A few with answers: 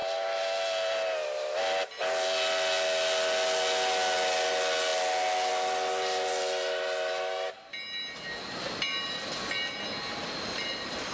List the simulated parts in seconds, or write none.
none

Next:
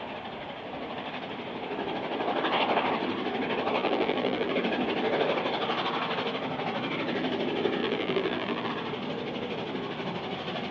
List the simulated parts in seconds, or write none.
3.8-4.5 (vocoder, BigVGAN v2); 7.8-8.7

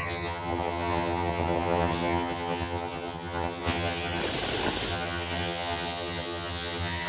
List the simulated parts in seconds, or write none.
0.0-4.2 (vocoder, HiFi-GAN); 4.9-7.1

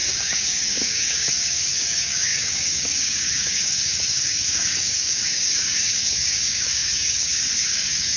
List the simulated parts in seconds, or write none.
0.0-8.2 (codec, DAC)

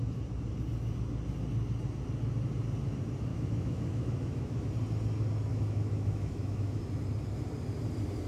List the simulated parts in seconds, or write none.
3.3-4.7 (autoencoder, DAC-VAE); 5.5-6.8

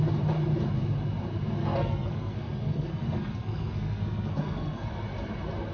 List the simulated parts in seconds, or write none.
1.6-4.9 (codec, SNAC)

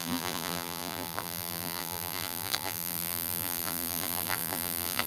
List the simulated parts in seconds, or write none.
0.0-5.1 (vocoder, BigVGAN v2)